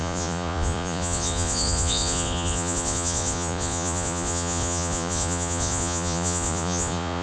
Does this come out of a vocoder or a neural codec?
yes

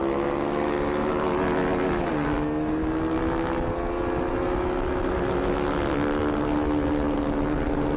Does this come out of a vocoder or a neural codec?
no